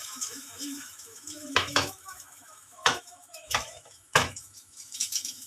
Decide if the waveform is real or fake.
fake